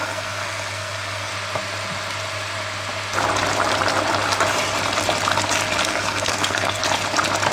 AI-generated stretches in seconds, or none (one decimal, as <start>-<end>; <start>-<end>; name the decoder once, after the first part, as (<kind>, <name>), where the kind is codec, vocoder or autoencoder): 0.0-1.3 (codec, SNAC); 5.8-6.8